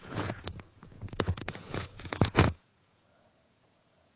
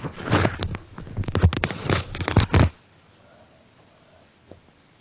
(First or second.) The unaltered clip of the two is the second